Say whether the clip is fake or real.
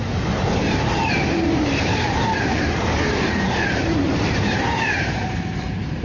fake